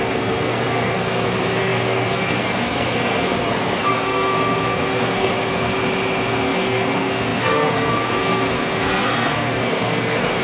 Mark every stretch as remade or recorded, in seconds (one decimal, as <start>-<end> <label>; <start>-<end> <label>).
0.0-5.7 remade; 5.7-6.3 recorded; 6.3-10.4 remade